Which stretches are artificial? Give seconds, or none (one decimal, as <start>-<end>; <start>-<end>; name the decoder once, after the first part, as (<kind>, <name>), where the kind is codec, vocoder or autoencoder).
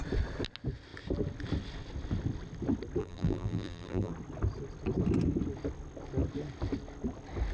3.0-4.1 (vocoder, BigVGAN v2)